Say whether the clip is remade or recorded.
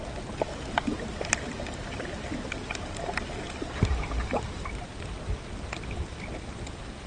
recorded